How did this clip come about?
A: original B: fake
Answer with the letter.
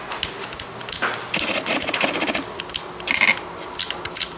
A